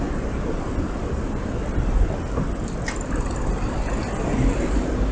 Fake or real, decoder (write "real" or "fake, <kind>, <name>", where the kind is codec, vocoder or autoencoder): real